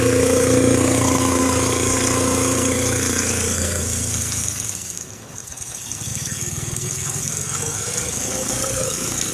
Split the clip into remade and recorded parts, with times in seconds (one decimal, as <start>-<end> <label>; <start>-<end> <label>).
0.0-9.3 remade